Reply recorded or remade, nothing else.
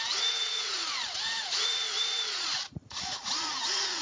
remade